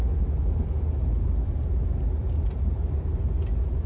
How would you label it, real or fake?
real